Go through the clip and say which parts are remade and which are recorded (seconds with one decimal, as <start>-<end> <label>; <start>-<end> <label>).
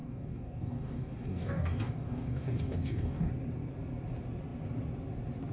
0.0-3.3 remade; 3.3-5.5 recorded